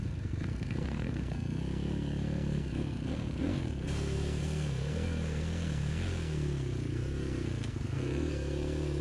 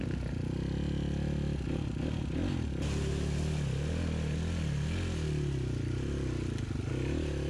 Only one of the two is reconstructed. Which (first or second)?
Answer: first